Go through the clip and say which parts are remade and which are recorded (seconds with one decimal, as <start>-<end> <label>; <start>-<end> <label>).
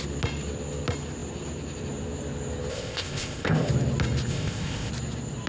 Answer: 0.0-2.7 recorded; 2.7-3.7 remade; 3.7-4.3 recorded; 4.3-4.9 remade; 4.9-5.5 recorded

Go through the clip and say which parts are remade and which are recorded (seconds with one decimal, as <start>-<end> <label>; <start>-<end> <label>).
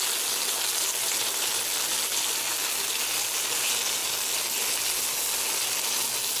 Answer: 0.0-6.4 recorded